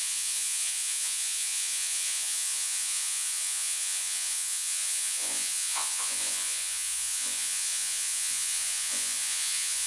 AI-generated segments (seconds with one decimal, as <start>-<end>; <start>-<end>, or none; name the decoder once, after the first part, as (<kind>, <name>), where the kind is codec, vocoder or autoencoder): 0.0-9.9 (vocoder, Vocos)